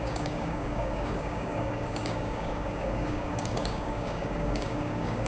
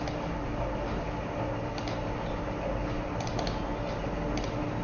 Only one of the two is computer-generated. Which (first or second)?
first